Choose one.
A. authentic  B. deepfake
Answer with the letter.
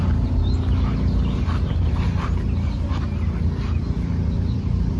A